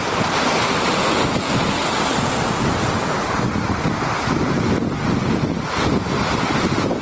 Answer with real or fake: real